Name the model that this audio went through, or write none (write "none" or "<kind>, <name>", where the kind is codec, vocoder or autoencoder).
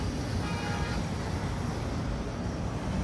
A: none